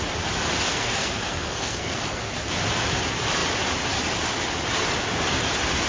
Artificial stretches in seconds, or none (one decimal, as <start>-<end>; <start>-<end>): 0.7-2.4